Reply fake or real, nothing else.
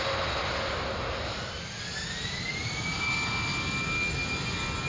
real